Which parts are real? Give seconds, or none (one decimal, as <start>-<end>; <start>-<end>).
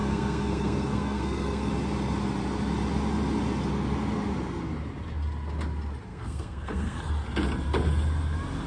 1.7-6.1; 7.1-8.7